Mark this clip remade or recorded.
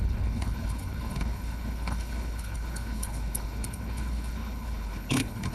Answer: remade